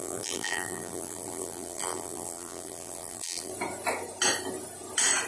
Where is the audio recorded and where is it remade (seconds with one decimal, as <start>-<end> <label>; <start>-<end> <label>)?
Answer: 0.0-3.5 remade; 3.5-5.3 recorded